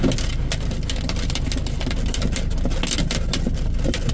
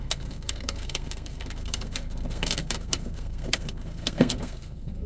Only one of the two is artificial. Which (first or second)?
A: second